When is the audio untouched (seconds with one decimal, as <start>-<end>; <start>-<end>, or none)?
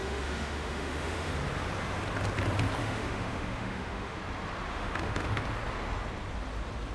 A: 1.3-2.8; 4.2-4.7; 5.4-6.9